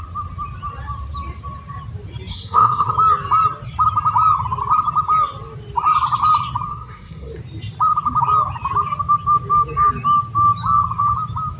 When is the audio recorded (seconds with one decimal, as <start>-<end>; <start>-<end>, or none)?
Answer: 0.0-2.3; 2.9-6.7; 7.3-11.6